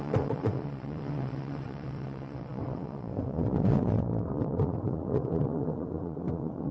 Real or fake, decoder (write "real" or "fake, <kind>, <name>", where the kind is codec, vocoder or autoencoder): fake, vocoder, WaveNeXt